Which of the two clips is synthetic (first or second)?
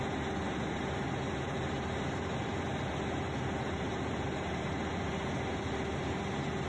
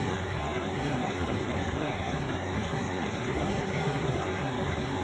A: second